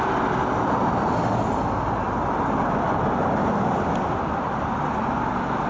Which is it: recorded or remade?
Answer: recorded